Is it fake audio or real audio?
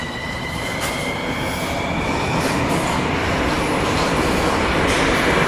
real